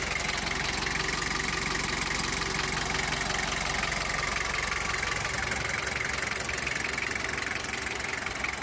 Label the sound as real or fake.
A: real